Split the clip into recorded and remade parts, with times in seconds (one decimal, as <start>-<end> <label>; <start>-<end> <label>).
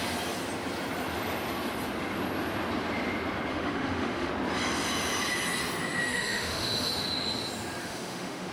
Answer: 0.0-3.5 recorded; 3.5-4.3 remade; 4.3-6.1 recorded; 6.1-6.9 remade; 6.9-7.8 recorded; 7.8-8.5 remade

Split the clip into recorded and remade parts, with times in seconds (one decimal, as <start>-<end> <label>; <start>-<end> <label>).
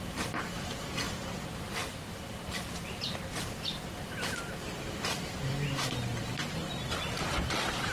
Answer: 0.0-7.9 recorded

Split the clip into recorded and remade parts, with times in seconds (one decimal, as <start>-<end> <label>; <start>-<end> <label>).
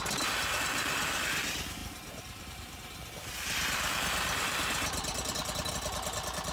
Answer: 0.0-1.8 recorded; 1.8-5.7 remade; 5.7-6.5 recorded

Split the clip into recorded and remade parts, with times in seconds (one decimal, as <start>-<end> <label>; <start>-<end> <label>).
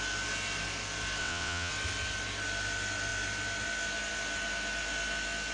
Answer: 0.0-1.2 recorded; 1.2-1.7 remade; 1.7-5.5 recorded